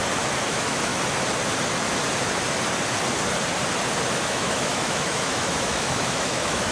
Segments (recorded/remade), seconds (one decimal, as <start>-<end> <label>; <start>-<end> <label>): 0.0-0.5 recorded; 0.5-0.9 remade; 0.9-4.1 recorded; 4.1-6.7 remade